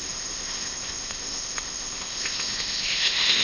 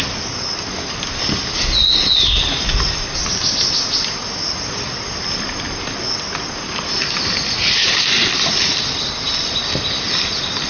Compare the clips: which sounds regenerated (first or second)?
first